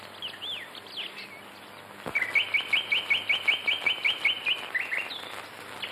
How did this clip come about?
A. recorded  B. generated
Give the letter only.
A